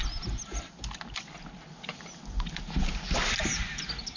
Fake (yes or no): no